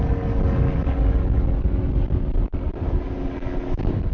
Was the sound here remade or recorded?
recorded